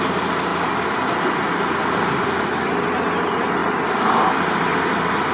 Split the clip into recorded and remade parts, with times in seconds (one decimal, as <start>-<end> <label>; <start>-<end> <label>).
0.0-0.5 recorded; 0.5-1.0 remade; 1.0-3.6 recorded; 3.6-5.3 remade